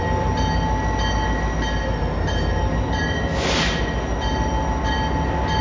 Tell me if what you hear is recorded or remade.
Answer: recorded